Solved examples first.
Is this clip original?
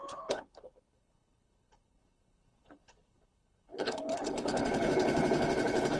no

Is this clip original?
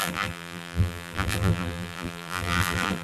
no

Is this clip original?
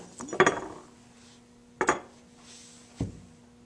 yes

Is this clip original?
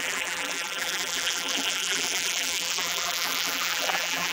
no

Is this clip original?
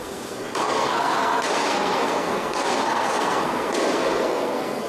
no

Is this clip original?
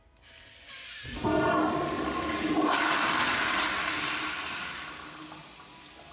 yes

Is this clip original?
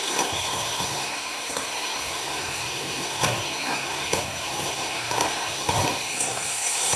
no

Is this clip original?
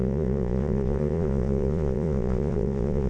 no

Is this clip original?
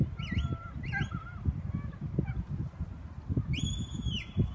yes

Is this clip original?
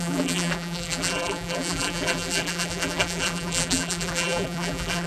no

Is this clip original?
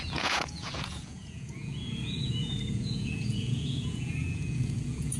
no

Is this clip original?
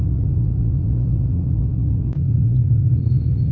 no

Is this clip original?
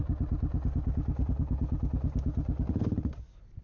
yes